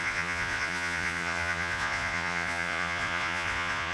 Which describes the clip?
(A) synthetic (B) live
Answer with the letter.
A